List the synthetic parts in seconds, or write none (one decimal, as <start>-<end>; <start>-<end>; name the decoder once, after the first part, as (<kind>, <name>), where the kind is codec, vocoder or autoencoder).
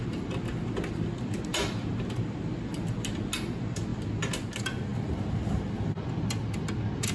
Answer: none